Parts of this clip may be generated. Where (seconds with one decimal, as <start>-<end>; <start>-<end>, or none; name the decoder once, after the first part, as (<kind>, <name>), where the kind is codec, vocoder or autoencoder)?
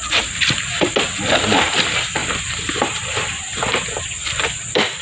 2.2-3.8 (vocoder, BigVGAN v2)